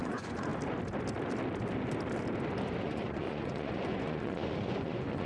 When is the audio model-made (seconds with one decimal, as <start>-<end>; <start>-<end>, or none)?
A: 0.0-0.5; 2.8-5.3

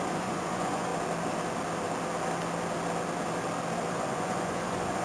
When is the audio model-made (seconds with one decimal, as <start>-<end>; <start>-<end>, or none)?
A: 0.0-0.9; 3.9-5.0

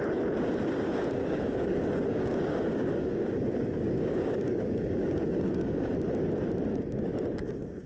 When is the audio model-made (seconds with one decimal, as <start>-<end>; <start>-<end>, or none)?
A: 1.2-5.9; 6.7-7.9

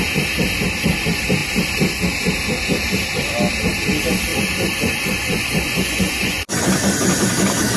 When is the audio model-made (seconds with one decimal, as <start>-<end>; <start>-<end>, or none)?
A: 4.3-6.6

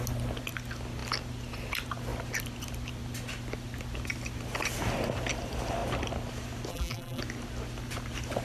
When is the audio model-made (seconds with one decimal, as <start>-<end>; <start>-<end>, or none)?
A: 6.7-7.2

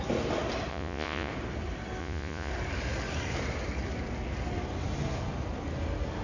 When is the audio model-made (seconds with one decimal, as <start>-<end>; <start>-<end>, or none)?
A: 0.7-1.3; 2.0-2.5

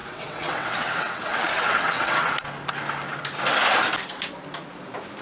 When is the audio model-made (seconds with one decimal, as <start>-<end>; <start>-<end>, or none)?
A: 0.0-2.2

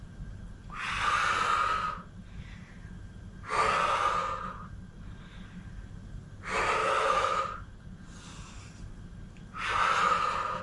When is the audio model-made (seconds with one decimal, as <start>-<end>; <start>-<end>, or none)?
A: 6.8-7.4